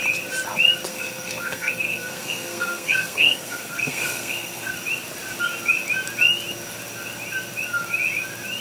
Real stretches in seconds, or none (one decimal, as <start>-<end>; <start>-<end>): 0.0-0.9; 4.7-8.6